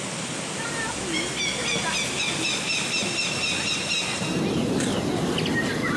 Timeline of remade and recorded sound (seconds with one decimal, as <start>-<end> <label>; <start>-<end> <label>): 0.0-6.0 recorded